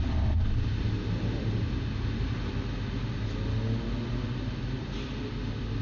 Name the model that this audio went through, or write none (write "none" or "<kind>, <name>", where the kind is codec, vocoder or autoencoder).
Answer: none